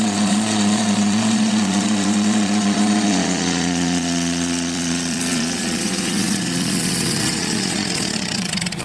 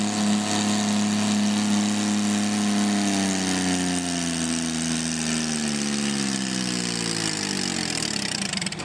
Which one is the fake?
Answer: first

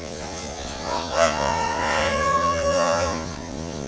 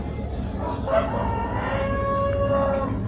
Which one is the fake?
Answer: first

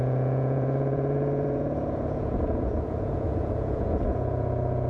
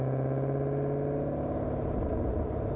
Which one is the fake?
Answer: first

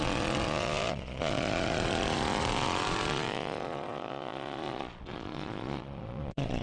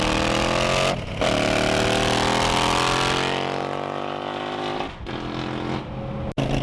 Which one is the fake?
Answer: first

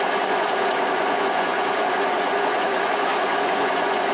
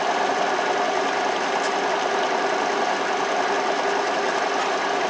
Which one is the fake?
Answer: first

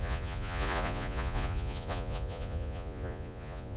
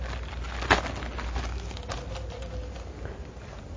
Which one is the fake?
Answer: first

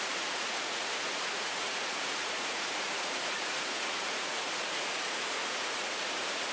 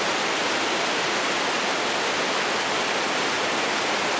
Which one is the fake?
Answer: first